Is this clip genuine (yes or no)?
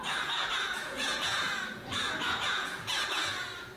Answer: no